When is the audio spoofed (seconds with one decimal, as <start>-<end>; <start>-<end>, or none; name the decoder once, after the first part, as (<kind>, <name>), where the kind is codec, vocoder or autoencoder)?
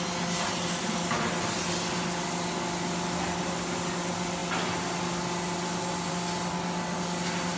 none